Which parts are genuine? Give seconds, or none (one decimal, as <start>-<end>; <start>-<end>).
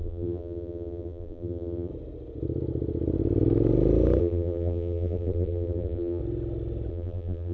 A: 1.9-4.2; 6.2-6.9